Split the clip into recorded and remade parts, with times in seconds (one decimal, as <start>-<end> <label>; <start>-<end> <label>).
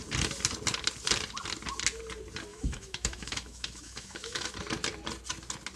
0.0-2.5 recorded; 2.5-4.5 remade; 4.5-5.8 recorded